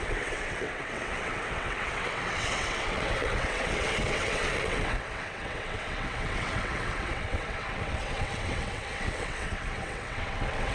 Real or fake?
fake